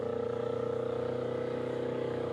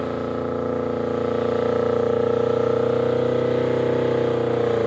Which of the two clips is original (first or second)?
second